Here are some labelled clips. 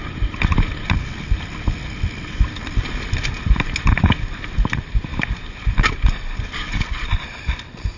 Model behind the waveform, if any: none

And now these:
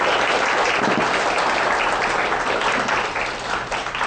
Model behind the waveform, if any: none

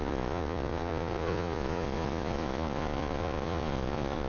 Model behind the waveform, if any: vocoder, Vocos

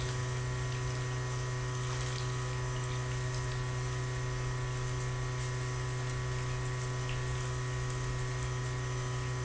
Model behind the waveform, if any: none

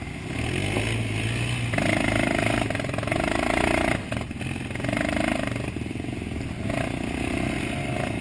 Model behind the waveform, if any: none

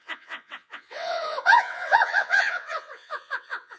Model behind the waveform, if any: vocoder, WaveNeXt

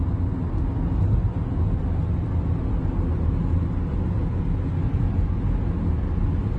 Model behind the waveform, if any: none